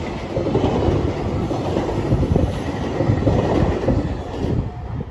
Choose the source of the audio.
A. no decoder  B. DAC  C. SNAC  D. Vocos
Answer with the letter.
A